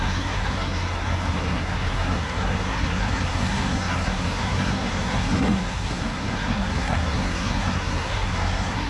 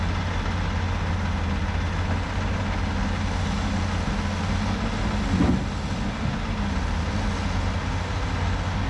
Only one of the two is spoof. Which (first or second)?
first